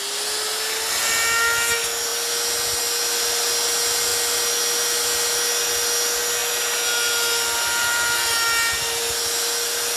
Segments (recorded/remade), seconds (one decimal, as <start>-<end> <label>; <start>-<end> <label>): 0.0-10.0 recorded